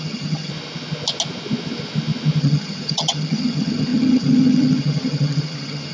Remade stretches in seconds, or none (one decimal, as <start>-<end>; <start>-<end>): 0.0-0.5; 2.4-5.9